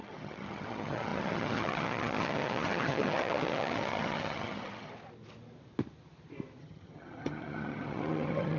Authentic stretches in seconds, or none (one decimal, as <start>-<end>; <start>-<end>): 4.9-6.6